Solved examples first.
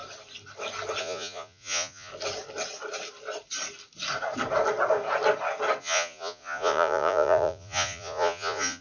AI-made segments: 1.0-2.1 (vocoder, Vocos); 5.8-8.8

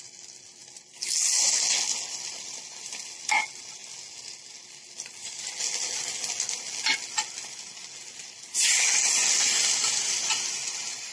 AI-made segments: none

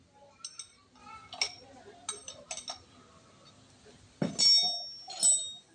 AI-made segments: none

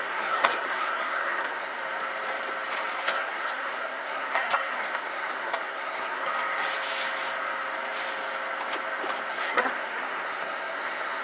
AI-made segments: 0.0-1.8 (codec, SNAC); 3.0-6.3; 9.3-11.2

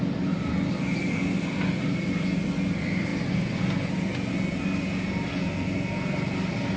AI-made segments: none

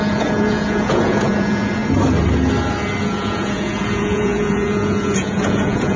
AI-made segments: 0.0-1.8 (vocoder, Vocos); 3.0-6.0